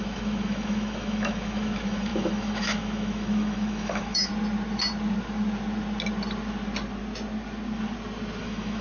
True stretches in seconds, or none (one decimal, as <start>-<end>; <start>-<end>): 4.3-8.4